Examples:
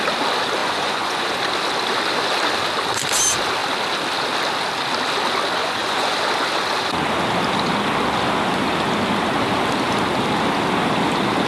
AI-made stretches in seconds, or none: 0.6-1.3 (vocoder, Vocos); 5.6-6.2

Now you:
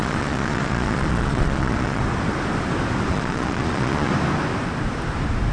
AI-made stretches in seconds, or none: 0.0-2.0 (vocoder, Vocos); 3.1-4.1

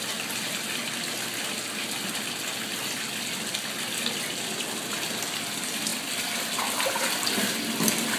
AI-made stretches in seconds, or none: none

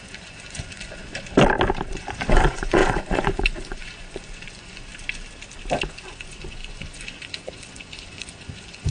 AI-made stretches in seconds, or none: 0.0-1.0 (vocoder, Vocos); 1.9-4.9; 5.9-8.9